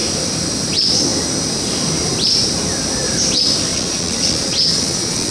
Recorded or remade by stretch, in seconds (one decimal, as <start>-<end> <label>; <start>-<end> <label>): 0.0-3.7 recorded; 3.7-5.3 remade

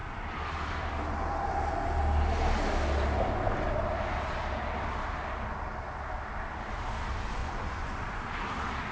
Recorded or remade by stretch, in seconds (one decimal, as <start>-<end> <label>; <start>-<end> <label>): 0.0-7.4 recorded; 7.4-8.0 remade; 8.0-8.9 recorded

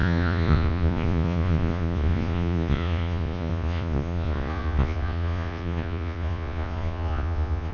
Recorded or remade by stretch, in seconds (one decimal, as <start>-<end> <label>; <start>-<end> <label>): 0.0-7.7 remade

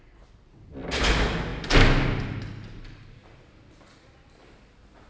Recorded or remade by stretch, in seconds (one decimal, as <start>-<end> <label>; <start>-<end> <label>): 0.0-5.1 recorded

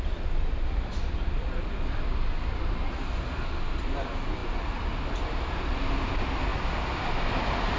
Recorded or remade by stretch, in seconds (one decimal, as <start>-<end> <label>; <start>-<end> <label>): 0.0-7.8 recorded